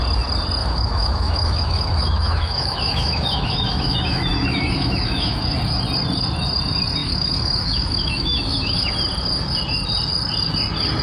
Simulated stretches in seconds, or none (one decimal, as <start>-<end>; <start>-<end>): 0.6-5.4; 7.0-8.9